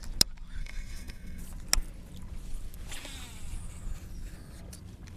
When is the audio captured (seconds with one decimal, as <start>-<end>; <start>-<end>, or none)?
0.0-0.6; 1.4-5.2